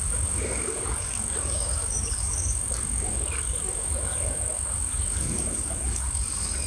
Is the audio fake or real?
fake